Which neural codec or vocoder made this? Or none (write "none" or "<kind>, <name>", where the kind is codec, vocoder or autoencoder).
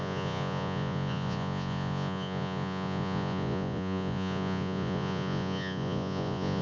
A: vocoder, Vocos